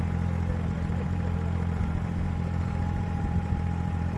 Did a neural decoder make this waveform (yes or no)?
yes